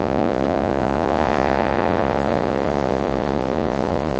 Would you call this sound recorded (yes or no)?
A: no